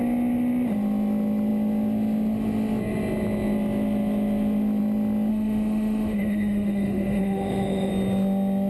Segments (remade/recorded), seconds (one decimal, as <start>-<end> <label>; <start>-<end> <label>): 0.0-5.3 recorded; 5.3-7.9 remade; 7.9-8.7 recorded